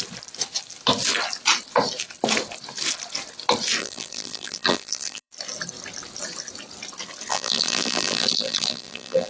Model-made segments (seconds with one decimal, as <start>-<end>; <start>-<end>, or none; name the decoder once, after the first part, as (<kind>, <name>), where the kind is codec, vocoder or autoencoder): 3.8-5.3 (vocoder, BigVGAN v2); 7.3-9.3